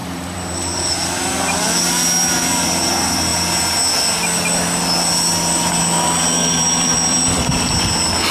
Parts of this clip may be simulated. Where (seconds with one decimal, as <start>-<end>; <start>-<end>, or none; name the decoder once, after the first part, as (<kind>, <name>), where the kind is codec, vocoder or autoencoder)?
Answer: 0.0-0.8 (vocoder, BigVGAN v2); 6.4-7.7